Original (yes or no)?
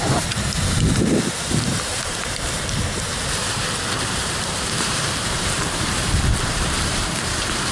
no